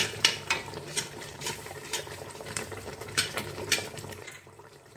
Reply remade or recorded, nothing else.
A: remade